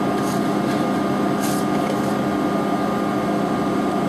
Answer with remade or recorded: recorded